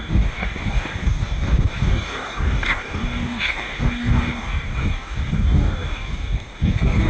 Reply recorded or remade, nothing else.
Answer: remade